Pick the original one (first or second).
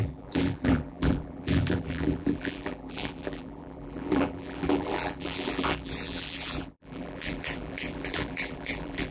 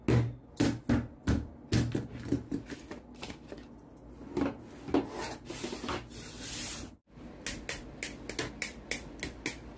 second